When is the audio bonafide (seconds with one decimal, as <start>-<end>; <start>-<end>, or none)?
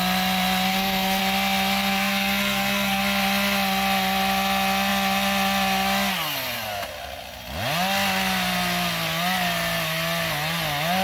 0.0-0.7; 1.2-1.9; 3.0-11.0